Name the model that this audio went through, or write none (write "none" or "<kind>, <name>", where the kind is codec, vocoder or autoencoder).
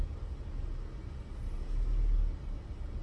none